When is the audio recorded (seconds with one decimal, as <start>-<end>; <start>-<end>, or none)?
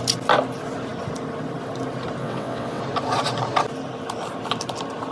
0.0-2.2; 2.8-5.1